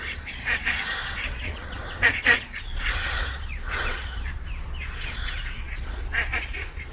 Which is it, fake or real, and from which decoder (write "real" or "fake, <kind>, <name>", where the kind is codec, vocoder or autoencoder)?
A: fake, vocoder, Vocos